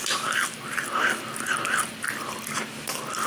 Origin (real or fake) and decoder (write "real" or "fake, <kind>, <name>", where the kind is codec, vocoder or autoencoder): real